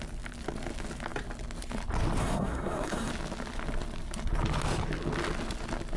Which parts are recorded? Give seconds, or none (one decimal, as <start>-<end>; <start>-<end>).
0.0-2.2; 3.1-6.0